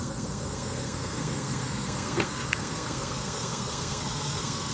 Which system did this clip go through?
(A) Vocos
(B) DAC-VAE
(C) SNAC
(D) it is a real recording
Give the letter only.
C